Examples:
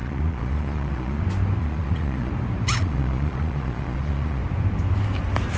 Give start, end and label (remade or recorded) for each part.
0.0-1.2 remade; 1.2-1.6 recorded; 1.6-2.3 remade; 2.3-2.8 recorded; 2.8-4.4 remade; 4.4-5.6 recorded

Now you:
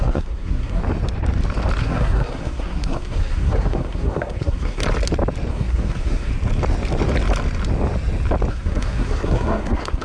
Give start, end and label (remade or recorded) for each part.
0.0-0.8 remade; 0.8-1.8 recorded; 1.8-4.8 remade; 4.8-5.5 recorded; 5.5-6.3 remade; 6.3-8.5 recorded; 8.5-10.0 remade

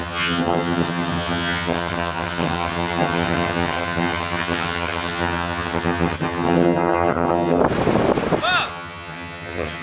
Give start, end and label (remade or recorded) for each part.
0.0-7.6 remade; 7.6-8.7 recorded; 8.7-9.8 remade

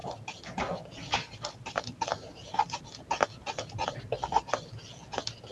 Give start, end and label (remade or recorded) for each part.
0.0-5.5 recorded

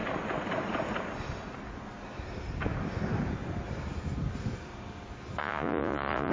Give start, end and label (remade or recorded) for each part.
0.0-5.4 recorded; 5.4-6.3 remade